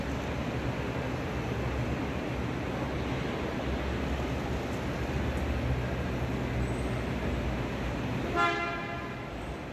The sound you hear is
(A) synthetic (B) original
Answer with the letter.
B